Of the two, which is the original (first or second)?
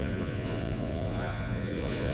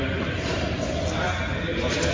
second